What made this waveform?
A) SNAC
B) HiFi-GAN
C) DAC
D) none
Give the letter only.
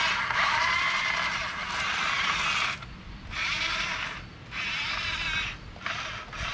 D